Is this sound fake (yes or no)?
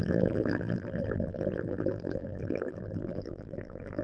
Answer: yes